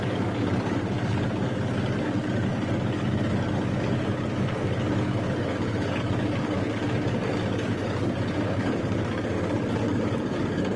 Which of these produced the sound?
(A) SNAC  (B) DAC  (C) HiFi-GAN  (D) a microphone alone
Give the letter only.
B